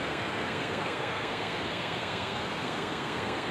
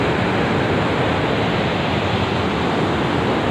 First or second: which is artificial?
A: first